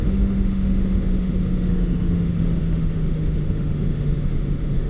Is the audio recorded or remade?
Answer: remade